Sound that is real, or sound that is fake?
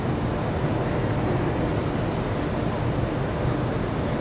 real